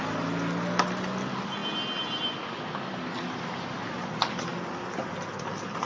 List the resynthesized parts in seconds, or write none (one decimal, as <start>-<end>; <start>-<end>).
none

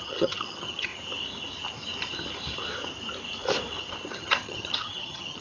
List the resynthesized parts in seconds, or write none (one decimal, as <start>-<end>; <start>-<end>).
0.0-0.9; 4.1-5.4

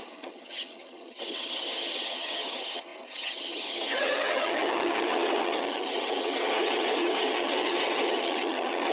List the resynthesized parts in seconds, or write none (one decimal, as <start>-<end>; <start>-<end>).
0.0-8.9